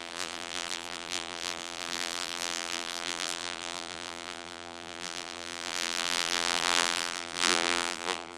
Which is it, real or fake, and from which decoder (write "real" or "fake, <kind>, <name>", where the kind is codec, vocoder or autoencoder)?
fake, vocoder, BigVGAN v2